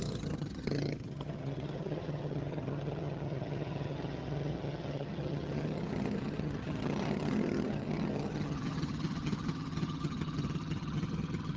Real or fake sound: fake